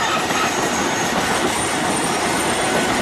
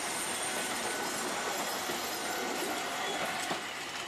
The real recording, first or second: second